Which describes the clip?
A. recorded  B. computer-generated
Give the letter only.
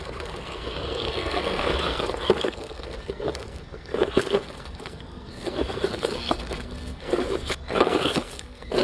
B